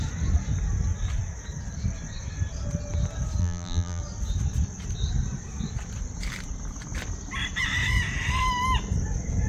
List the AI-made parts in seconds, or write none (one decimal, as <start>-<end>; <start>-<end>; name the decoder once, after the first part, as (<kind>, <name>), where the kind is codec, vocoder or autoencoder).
3.4-4.0 (vocoder, BigVGAN v2)